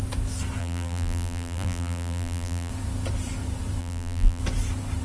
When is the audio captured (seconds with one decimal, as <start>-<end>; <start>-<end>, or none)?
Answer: 0.0-0.6; 2.7-3.8; 4.4-5.0